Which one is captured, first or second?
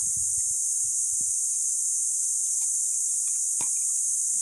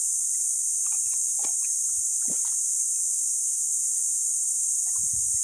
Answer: second